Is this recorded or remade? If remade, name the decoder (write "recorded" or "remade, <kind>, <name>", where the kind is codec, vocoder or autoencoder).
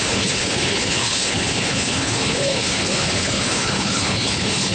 remade, codec, HILCodec